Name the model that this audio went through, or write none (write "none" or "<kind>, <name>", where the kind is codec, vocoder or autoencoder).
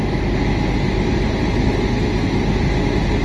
none